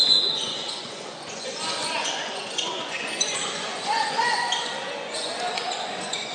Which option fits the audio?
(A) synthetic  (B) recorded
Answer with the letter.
A